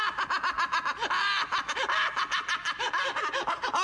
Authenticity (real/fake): real